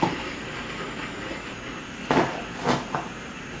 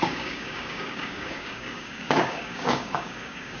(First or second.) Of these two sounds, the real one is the first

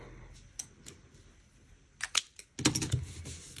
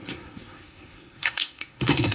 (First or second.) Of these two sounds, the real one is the first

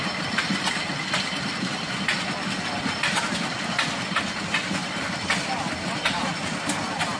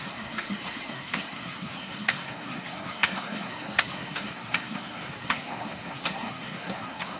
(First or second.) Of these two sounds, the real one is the first